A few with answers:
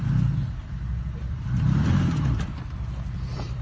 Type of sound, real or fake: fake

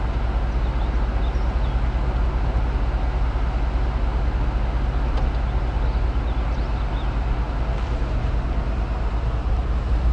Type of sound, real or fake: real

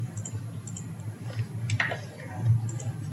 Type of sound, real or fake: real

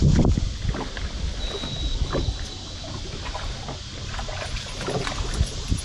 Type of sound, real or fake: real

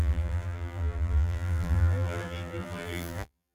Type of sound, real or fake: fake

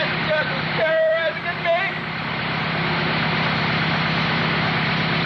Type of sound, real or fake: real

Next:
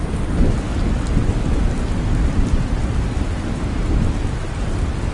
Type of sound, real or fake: real